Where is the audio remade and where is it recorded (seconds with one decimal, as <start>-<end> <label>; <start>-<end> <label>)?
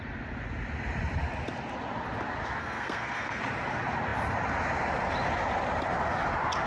0.0-2.6 recorded; 2.6-3.4 remade; 3.4-6.7 recorded